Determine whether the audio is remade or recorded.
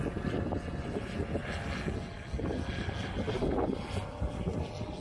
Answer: recorded